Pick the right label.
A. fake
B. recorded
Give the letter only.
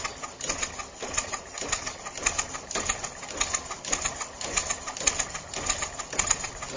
B